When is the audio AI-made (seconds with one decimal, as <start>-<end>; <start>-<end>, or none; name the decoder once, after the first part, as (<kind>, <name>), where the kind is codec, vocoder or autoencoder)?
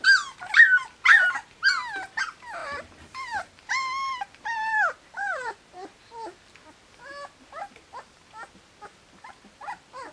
2.6-6.0 (vocoder, BigVGAN v2)